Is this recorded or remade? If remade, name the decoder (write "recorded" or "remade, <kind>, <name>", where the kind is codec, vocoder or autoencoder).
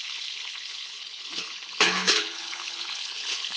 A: remade, codec, HILCodec